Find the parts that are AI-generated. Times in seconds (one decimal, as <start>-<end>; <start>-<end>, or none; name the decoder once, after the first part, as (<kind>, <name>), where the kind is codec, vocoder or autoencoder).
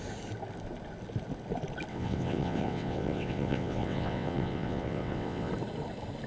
1.9-5.5 (vocoder, WaveNeXt)